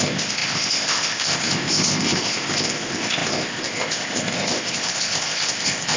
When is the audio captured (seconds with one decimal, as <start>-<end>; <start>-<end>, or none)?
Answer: none